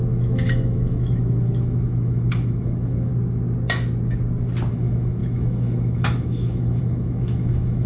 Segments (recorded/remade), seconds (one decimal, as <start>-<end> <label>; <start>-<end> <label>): 0.0-3.1 remade; 3.1-4.7 recorded; 4.7-7.9 remade